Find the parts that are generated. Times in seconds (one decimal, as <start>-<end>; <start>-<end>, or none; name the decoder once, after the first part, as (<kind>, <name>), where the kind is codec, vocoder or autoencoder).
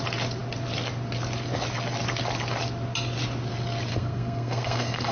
3.9-5.1 (codec, SNAC)